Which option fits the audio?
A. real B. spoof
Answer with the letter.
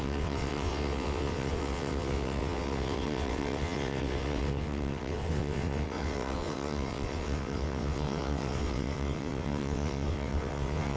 B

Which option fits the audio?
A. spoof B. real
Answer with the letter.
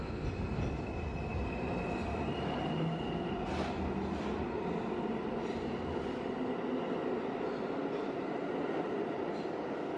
B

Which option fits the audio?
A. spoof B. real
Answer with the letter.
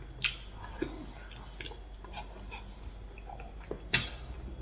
B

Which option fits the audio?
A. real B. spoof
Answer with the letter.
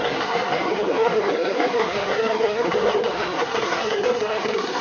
B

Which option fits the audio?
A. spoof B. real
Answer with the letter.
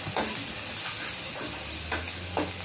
B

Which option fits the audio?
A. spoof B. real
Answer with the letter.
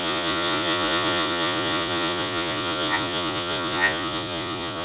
A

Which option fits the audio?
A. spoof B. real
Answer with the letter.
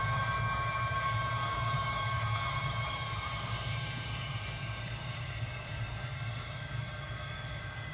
A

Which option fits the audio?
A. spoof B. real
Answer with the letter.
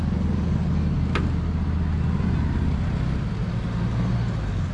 B